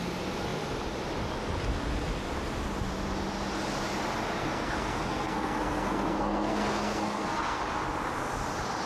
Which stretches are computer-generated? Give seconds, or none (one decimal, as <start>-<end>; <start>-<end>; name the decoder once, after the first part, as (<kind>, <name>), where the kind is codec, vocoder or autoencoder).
4.4-7.6 (codec, SNAC)